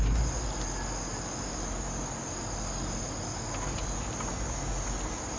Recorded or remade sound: recorded